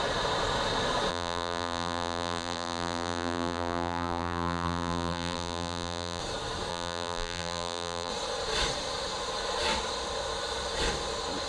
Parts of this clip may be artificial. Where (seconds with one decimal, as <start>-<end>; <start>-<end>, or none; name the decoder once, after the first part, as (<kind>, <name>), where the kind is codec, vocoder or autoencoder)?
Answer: 1.1-6.2 (vocoder, BigVGAN v2); 6.7-8.1